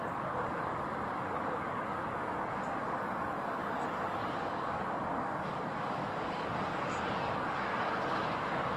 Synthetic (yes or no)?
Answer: yes